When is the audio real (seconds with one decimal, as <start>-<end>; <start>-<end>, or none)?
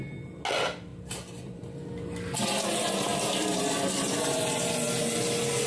0.0-5.7